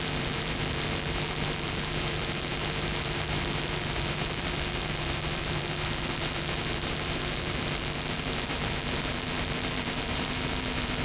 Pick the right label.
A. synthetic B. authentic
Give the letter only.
A